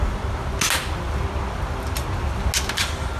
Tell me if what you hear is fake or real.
real